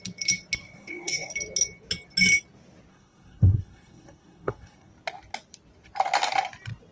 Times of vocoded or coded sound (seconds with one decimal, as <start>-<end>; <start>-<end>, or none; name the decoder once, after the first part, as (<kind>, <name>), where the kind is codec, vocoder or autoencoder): 0.6-1.3 (codec, SNAC); 2.9-4.9